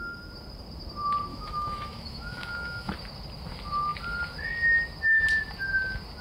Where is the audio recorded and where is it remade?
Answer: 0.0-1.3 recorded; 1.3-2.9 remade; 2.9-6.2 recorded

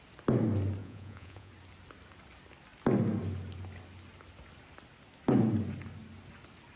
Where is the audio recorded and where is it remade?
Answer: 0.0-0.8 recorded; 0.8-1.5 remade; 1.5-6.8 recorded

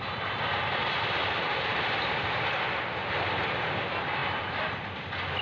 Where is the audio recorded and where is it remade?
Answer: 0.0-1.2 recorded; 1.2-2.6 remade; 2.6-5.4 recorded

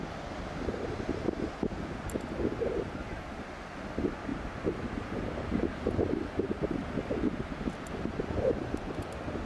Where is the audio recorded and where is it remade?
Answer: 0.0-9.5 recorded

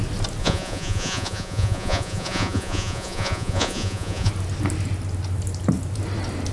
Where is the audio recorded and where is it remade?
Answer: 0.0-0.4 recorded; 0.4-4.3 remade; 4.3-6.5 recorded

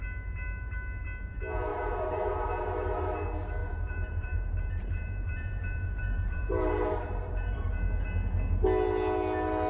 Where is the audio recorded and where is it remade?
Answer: 0.0-1.7 recorded; 1.7-2.6 remade; 2.6-3.6 recorded; 3.6-8.0 remade; 8.0-9.7 recorded